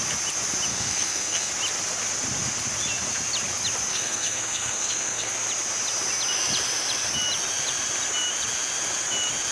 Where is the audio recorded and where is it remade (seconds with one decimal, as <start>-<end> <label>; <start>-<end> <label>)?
0.0-0.7 recorded; 0.7-1.5 remade; 1.5-3.9 recorded; 3.9-5.3 remade; 5.3-9.5 recorded